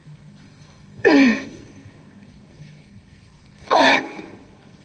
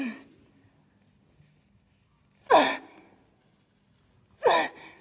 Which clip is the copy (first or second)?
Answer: first